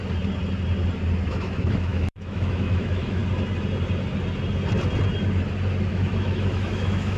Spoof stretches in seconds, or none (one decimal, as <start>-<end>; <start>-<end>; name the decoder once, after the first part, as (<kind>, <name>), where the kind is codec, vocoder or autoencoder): 1.3-3.2 (autoencoder, DAC-VAE); 5.9-7.2